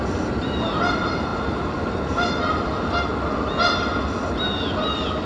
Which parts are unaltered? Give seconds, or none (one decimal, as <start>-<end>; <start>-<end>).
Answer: 0.0-5.3